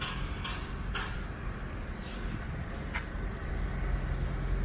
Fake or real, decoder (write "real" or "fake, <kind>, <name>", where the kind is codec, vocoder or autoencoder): real